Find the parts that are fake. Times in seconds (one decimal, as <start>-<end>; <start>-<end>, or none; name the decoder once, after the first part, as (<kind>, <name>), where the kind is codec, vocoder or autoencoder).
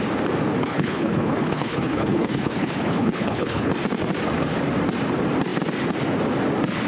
0.6-3.7 (codec, HILCodec)